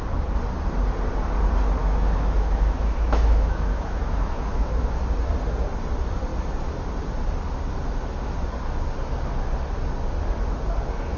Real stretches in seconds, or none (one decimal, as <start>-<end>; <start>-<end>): 0.0-1.8; 5.0-11.2